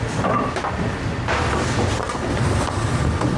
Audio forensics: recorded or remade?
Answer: remade